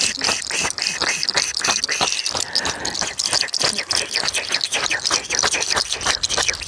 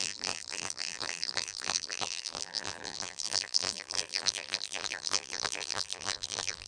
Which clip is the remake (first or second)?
second